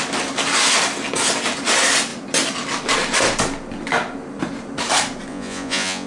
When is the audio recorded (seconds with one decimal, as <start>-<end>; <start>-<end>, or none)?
0.0-5.3